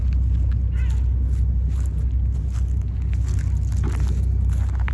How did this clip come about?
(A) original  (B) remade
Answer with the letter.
A